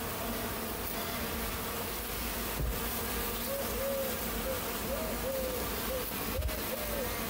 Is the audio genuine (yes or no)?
yes